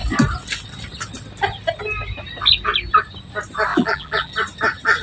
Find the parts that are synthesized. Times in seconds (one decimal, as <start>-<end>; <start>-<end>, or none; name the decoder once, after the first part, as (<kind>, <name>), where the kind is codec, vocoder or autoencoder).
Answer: 3.7-4.3 (vocoder, BigVGAN v2)